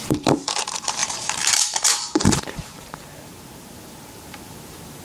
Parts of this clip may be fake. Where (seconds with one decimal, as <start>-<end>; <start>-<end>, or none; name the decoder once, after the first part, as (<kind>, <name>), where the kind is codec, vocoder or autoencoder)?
0.0-5.0 (vocoder, BigVGAN v2)